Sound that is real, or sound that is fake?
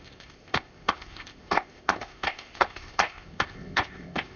fake